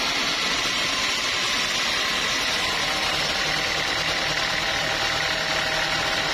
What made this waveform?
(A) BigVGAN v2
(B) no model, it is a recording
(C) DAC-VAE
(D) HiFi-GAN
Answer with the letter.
B